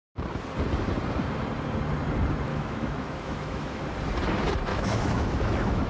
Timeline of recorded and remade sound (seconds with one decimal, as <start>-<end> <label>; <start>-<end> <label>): 0.0-2.5 recorded; 2.5-3.8 remade; 3.8-4.7 recorded; 4.7-5.9 remade